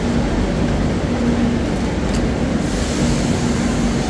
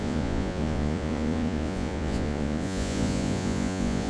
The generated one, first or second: second